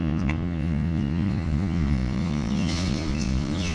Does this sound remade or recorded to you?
remade